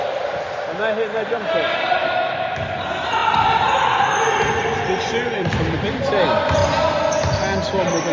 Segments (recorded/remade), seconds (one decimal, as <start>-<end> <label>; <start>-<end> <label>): 0.0-2.0 recorded; 2.0-2.7 remade; 2.7-8.1 recorded